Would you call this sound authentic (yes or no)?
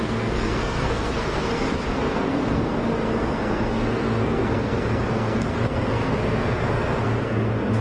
no